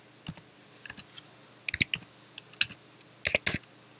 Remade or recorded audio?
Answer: recorded